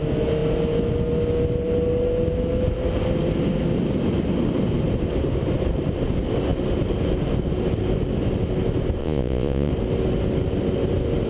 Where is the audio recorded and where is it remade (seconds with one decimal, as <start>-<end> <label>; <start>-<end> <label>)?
0.0-9.0 recorded; 9.0-9.7 remade; 9.7-11.3 recorded